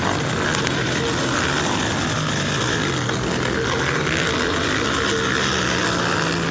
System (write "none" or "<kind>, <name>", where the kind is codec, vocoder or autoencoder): none